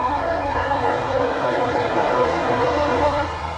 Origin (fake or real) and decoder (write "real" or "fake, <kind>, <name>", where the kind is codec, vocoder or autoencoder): fake, codec, SNAC